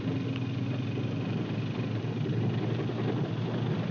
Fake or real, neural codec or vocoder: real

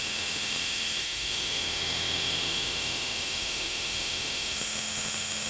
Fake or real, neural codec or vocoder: fake, autoencoder, DAC-VAE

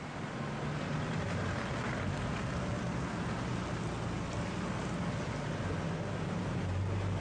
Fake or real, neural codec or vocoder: real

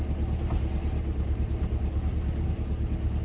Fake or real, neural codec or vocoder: real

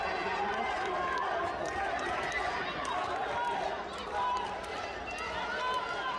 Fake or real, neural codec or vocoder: real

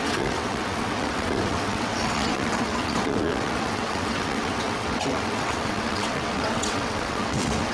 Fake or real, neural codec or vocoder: fake, vocoder, WaveNeXt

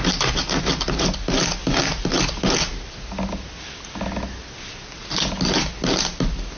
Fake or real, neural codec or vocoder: real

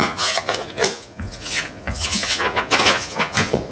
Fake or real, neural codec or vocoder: fake, vocoder, Vocos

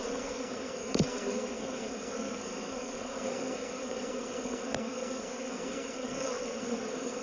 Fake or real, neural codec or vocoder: fake, codec, SNAC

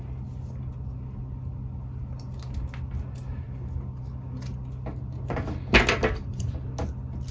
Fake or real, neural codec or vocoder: real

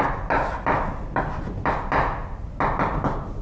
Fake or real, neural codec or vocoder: real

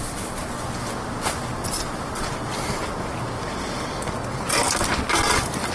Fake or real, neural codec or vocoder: real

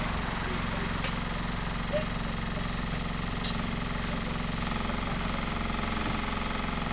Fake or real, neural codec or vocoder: real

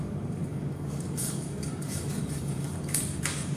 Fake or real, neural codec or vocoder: fake, codec, DAC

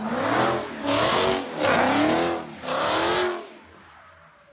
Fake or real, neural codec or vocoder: real